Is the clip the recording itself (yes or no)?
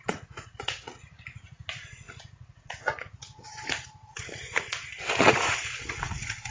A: no